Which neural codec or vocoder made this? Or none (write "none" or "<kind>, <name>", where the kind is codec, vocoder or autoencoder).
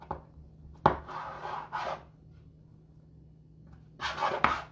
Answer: none